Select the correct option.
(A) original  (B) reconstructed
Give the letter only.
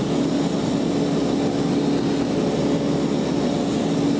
A